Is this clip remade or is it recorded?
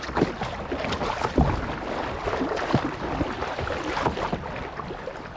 recorded